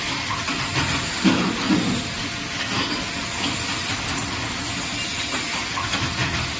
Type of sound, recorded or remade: recorded